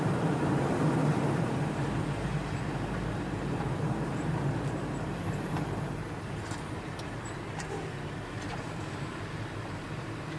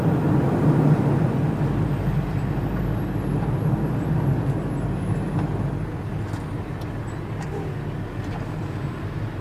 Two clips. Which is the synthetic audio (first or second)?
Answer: first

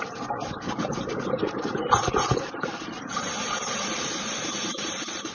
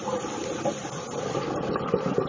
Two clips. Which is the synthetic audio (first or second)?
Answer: first